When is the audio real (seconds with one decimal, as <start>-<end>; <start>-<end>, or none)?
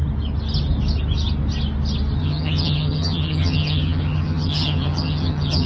0.0-2.2